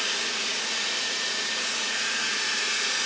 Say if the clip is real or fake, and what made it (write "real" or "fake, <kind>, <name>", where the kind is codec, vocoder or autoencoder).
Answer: fake, vocoder, Vocos